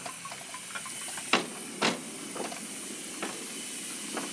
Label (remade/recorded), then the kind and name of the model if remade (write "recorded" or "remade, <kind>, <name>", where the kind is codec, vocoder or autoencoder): recorded